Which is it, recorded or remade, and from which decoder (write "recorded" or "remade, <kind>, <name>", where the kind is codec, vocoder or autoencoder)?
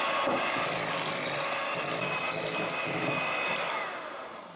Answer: recorded